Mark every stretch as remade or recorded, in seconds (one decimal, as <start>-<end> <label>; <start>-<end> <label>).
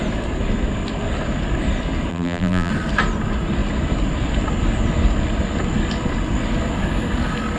0.0-2.1 recorded; 2.1-2.7 remade; 2.7-7.6 recorded